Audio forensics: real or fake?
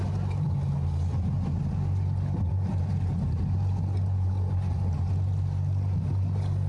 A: real